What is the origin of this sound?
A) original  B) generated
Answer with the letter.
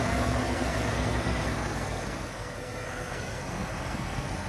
B